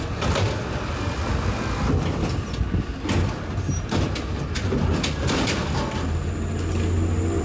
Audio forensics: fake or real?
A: real